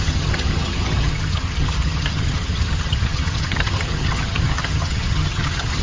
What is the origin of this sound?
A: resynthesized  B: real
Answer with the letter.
A